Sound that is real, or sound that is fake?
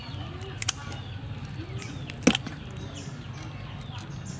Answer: real